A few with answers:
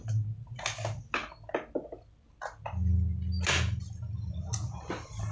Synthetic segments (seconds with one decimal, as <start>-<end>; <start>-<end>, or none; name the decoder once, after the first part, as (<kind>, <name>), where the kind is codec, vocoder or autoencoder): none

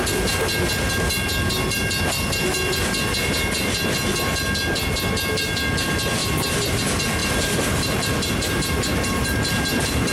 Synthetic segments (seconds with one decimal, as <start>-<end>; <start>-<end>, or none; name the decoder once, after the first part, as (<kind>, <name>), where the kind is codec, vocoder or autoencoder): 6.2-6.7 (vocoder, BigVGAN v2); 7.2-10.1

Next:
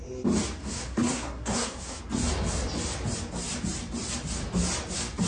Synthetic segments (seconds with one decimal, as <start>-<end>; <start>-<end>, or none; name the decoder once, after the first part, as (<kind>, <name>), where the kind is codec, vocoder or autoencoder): 0.6-2.0 (codec, SNAC)

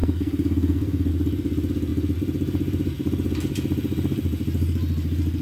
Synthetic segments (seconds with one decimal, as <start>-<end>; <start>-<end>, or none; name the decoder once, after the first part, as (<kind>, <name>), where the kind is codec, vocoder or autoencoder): 0.0-1.1 (codec, SNAC)